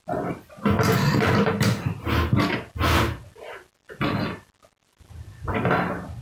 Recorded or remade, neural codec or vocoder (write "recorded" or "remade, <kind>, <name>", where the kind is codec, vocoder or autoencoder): recorded